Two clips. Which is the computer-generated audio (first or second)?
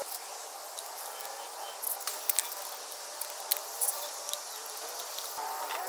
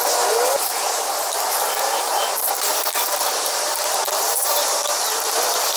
second